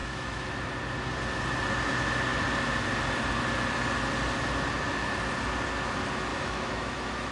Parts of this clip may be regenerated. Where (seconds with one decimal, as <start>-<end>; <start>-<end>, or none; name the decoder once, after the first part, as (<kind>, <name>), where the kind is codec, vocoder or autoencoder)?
0.0-0.5 (autoencoder, DAC-VAE); 6.3-7.3